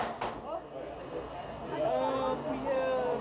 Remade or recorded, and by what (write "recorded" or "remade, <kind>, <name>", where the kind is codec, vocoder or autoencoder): recorded